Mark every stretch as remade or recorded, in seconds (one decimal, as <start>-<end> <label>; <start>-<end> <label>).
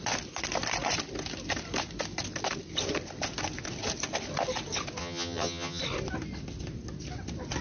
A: 0.0-5.0 recorded; 5.0-5.8 remade; 5.8-7.6 recorded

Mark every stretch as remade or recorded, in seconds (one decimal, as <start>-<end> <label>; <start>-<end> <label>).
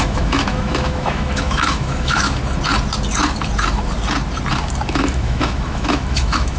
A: 0.0-2.4 remade; 2.4-4.9 recorded; 4.9-6.6 remade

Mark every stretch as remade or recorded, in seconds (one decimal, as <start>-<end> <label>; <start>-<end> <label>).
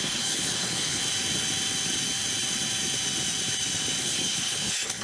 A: 0.0-1.0 remade; 1.0-4.0 recorded; 4.0-5.0 remade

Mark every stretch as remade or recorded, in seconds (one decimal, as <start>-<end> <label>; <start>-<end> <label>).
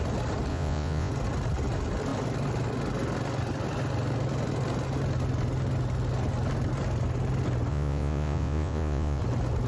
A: 0.0-0.5 recorded; 0.5-1.1 remade; 1.1-7.7 recorded; 7.7-9.2 remade; 9.2-9.7 recorded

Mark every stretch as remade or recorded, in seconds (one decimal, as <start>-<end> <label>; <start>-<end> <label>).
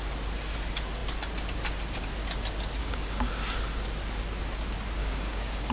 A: 0.0-2.8 recorded; 2.8-3.3 remade; 3.3-5.0 recorded; 5.0-5.7 remade